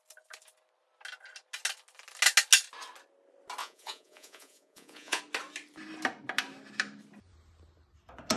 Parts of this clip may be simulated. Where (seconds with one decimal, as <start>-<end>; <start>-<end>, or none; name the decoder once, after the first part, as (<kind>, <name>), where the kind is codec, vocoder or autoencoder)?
3.6-5.2 (vocoder, Vocos)